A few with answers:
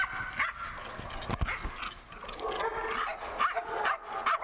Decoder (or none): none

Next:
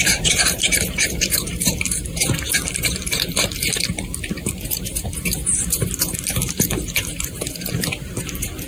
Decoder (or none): vocoder, BigVGAN v2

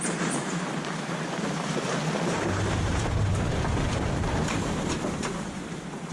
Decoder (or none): vocoder, BigVGAN v2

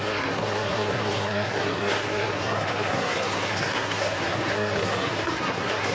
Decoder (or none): codec, SNAC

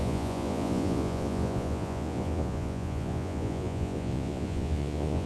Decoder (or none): vocoder, Vocos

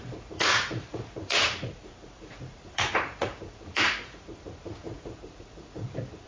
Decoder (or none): vocoder, Vocos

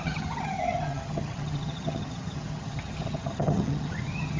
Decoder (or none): vocoder, HiFi-GAN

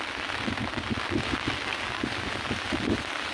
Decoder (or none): none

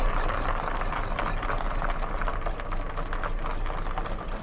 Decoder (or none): none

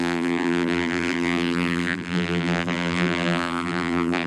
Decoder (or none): vocoder, BigVGAN v2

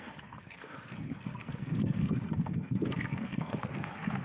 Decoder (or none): codec, SNAC